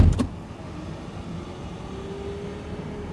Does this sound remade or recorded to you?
recorded